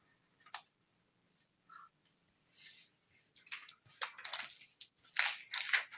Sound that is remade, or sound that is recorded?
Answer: recorded